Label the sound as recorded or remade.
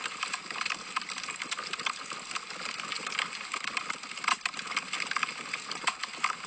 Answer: recorded